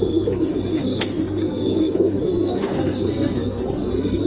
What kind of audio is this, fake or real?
fake